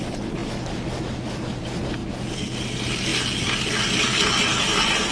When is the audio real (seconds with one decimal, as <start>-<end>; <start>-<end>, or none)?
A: 0.0-5.1

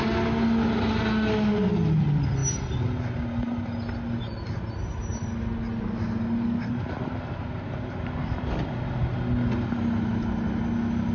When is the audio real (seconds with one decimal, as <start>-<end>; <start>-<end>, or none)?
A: 0.0-11.1